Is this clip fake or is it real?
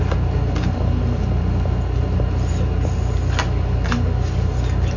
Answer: real